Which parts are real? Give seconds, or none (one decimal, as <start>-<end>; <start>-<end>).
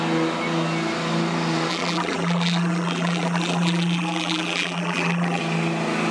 0.0-1.7; 5.4-6.1